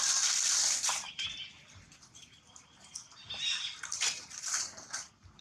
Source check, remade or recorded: remade